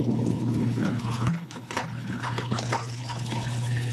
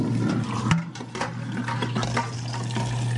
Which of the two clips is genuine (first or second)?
second